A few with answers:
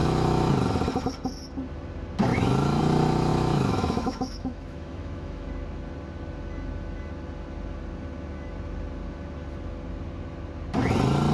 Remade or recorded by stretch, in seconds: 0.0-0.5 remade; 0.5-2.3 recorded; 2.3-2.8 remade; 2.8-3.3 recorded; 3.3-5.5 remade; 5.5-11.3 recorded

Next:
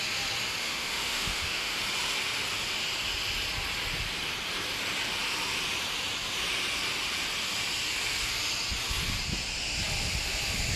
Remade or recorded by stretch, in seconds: 0.0-0.6 recorded; 0.6-1.8 remade; 1.8-10.8 recorded

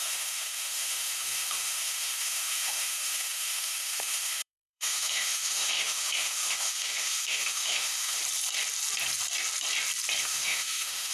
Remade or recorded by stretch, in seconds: 0.0-8.2 remade; 8.2-10.2 recorded; 10.2-11.1 remade

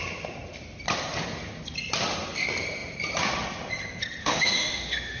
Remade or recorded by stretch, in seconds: 0.0-4.2 recorded; 4.2-5.2 remade

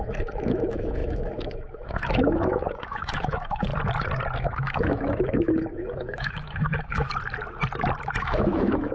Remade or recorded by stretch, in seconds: 0.0-3.7 remade; 3.7-4.4 recorded; 4.4-7.1 remade; 7.1-8.2 recorded; 8.2-8.9 remade